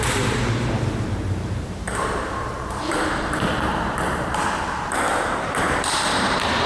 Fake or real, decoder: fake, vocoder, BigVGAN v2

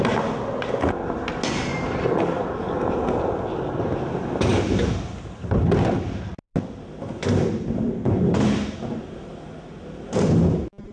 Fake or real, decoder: real